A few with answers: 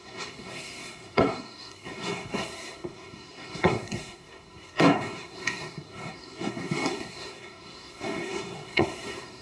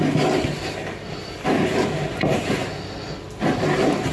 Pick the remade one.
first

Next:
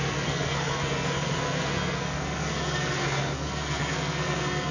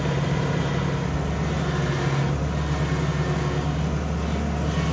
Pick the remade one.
first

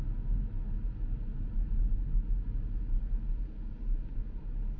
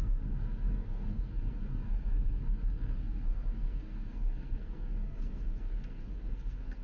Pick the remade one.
second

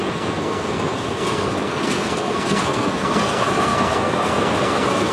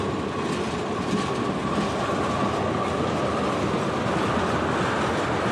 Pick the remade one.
first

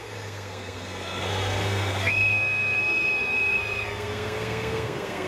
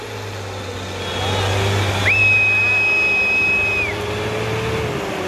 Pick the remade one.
first